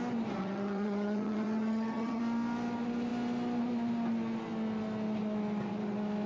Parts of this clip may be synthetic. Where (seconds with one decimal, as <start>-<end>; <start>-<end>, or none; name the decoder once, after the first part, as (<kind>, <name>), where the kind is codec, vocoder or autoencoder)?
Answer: 0.4-2.2 (vocoder, HiFi-GAN)